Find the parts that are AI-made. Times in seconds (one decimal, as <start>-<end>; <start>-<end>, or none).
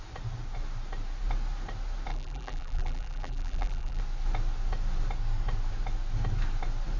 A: 2.1-4.0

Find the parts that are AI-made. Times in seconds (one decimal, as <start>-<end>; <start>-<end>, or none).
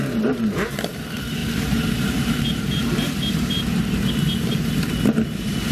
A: 0.0-5.7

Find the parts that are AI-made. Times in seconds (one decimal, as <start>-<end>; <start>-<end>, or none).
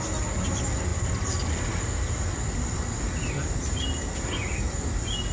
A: none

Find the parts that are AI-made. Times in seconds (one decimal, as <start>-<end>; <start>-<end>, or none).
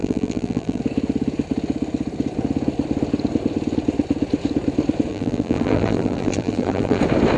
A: 0.0-0.8; 5.1-7.0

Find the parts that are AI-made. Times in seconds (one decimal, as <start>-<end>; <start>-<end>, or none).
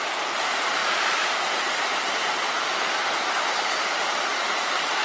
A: 0.8-2.6; 4.3-5.0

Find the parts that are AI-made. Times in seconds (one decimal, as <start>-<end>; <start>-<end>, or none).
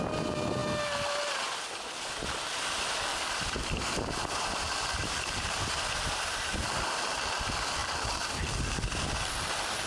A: 3.1-6.2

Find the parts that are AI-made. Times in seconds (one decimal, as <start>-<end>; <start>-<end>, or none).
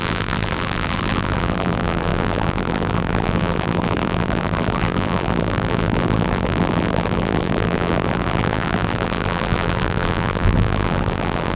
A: 0.0-11.6